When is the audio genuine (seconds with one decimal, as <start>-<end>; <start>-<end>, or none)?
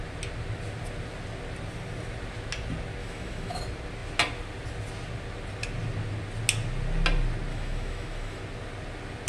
0.0-3.0; 3.6-7.5; 8.4-9.3